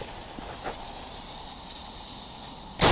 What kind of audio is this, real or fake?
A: real